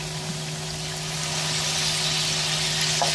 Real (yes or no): yes